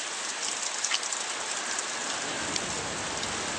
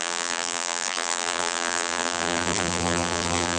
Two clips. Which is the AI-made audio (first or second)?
second